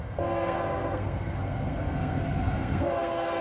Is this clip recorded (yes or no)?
no